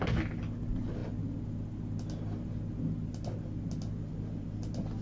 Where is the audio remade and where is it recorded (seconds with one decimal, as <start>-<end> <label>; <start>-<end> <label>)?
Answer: 0.0-5.0 recorded